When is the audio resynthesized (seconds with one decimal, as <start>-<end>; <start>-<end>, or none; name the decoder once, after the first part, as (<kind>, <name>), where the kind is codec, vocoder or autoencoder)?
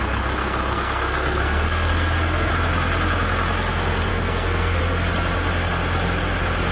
0.4-2.5 (codec, SNAC); 4.1-4.8